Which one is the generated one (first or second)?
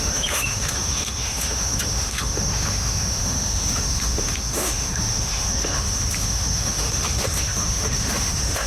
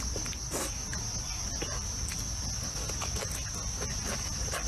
first